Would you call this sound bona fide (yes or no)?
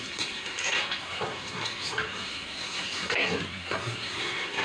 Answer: no